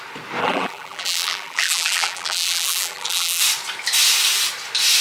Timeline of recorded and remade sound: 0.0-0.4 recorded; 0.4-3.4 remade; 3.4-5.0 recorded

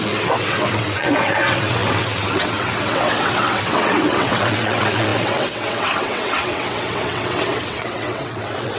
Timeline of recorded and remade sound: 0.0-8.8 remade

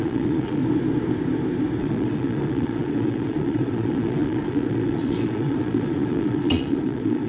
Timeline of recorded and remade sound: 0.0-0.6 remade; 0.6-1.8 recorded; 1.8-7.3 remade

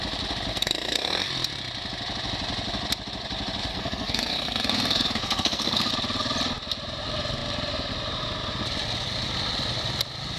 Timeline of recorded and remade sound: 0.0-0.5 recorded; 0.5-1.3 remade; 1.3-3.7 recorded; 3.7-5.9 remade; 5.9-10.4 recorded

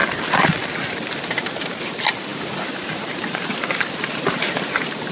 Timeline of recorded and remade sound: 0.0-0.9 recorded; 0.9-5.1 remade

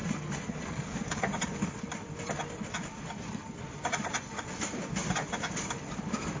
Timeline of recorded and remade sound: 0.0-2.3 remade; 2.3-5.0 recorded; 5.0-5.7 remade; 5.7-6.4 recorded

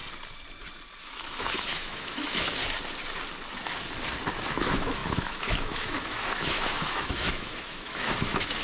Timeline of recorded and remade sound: 0.0-1.0 recorded; 1.0-2.6 remade; 2.6-4.6 recorded; 4.6-8.6 remade

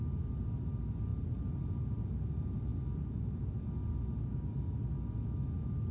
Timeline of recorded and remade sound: 0.0-5.9 recorded